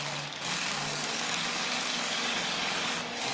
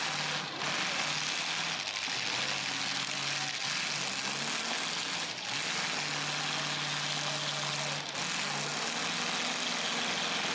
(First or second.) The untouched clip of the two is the second